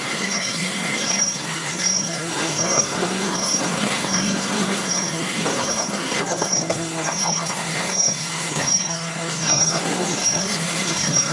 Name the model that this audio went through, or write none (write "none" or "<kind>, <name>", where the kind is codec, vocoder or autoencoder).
codec, SNAC